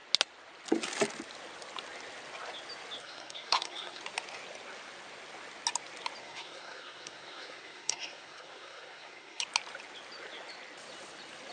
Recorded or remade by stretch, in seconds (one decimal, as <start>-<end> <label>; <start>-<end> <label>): 0.0-3.0 recorded; 3.0-4.0 remade; 4.0-6.2 recorded; 6.2-9.4 remade; 9.4-11.5 recorded